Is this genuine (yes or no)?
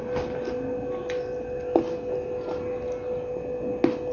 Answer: yes